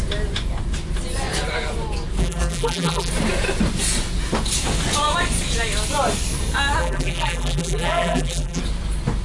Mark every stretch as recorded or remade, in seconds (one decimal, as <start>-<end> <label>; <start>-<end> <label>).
0.0-2.2 recorded; 2.2-3.1 remade; 3.1-6.8 recorded; 6.8-8.6 remade; 8.6-9.2 recorded